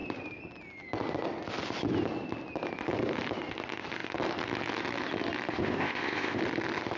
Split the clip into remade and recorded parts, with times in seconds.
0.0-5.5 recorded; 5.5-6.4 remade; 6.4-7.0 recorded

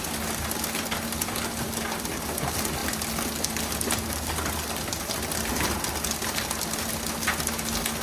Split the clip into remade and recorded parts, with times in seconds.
0.0-8.0 recorded

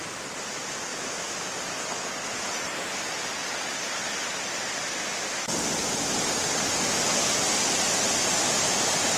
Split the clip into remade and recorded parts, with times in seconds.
0.0-9.2 recorded